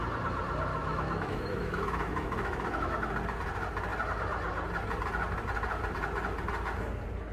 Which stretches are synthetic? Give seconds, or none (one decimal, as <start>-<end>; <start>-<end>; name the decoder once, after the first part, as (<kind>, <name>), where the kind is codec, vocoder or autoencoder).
0.7-3.1 (autoencoder, DAC-VAE)